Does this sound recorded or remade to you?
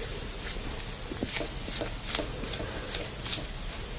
recorded